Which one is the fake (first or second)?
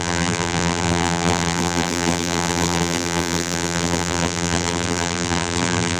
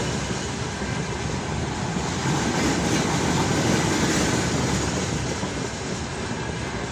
first